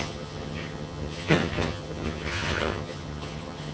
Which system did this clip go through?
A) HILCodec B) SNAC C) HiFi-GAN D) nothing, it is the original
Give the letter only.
C